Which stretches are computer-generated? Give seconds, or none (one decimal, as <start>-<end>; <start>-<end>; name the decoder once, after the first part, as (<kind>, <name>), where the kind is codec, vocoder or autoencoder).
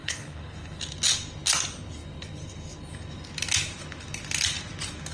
0.0-0.8 (codec, HILCodec)